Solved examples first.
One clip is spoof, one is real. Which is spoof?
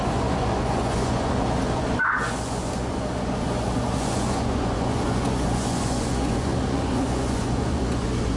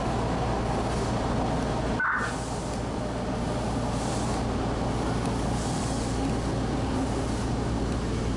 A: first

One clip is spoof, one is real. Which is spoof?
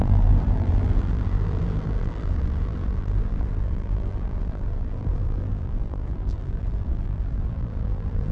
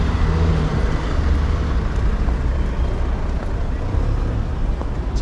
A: first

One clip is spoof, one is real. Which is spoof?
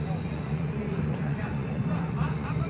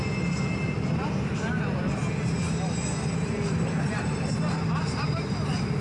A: first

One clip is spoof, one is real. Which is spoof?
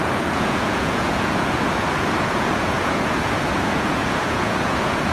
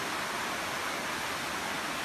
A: first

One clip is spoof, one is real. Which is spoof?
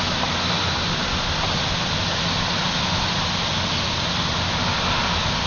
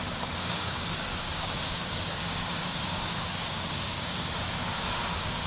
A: second